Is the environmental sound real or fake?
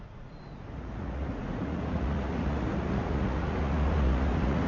fake